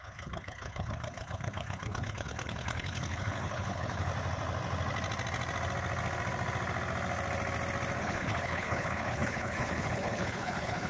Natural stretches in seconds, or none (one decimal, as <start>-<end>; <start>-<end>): 4.1-8.0